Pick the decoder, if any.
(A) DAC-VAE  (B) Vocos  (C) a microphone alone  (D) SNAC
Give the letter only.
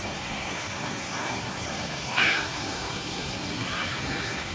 D